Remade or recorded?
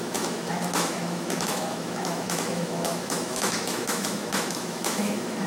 remade